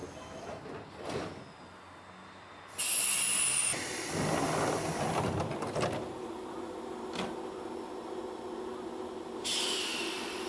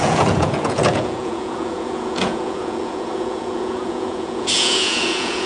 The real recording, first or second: first